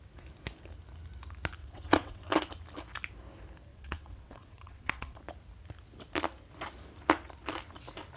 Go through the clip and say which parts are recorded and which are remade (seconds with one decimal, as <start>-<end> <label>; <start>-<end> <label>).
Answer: 0.0-1.6 recorded; 1.6-2.5 remade; 2.5-3.7 recorded; 3.7-5.2 remade; 5.2-8.2 recorded